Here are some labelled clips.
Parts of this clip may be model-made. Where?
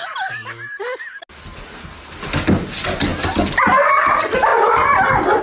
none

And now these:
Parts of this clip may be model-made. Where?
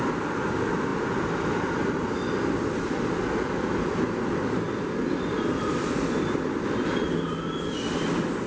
none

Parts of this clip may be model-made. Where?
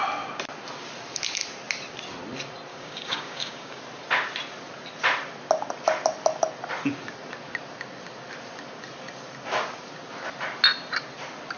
2.7-3.8 (codec, DAC)